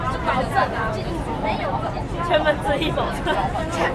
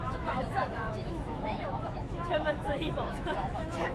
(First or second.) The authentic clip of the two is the first